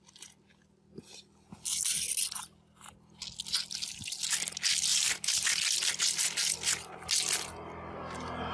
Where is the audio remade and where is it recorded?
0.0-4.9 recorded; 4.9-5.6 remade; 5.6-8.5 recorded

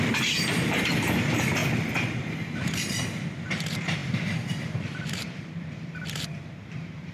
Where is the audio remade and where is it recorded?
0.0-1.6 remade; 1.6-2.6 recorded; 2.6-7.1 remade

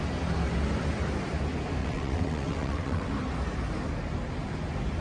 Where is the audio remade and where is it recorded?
0.0-1.8 recorded; 1.8-3.1 remade; 3.1-5.0 recorded